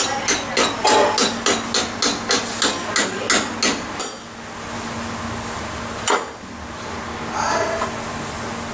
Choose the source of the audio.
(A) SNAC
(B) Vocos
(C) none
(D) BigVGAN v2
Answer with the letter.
C